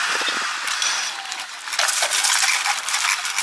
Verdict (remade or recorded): recorded